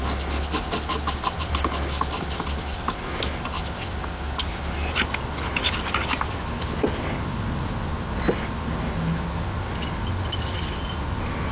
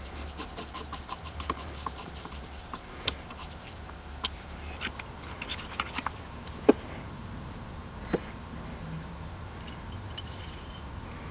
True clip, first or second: first